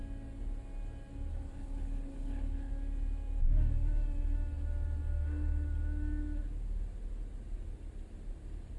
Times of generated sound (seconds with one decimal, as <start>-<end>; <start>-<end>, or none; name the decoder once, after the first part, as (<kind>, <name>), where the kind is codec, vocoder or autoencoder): 1.3-2.7 (codec, HILCodec)